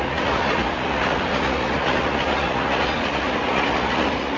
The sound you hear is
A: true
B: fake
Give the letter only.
B